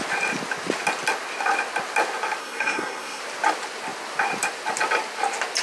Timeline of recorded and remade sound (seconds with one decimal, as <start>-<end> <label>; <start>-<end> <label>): 0.0-2.4 recorded; 2.4-3.2 remade; 3.2-5.6 recorded